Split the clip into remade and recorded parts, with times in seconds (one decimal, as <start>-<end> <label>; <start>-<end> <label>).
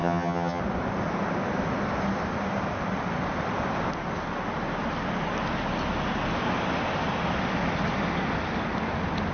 0.0-0.6 remade; 0.6-9.3 recorded